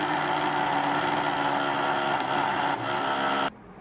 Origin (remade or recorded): recorded